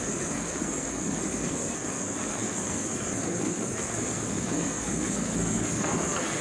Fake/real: fake